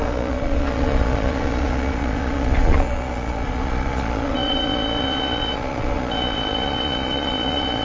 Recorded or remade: remade